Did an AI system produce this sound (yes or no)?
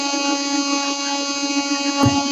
no